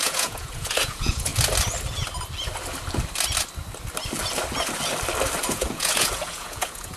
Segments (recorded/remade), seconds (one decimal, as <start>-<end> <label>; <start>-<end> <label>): 0.0-1.3 remade; 1.3-5.5 recorded; 5.5-7.0 remade